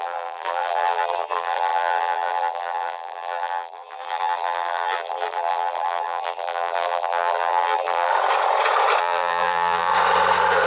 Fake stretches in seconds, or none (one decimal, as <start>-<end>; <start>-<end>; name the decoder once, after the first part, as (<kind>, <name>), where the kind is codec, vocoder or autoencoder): 0.0-8.1 (vocoder, BigVGAN v2); 9.0-9.9